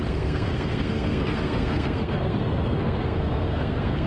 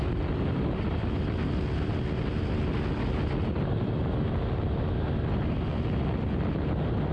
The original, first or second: second